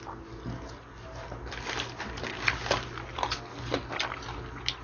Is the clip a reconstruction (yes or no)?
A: no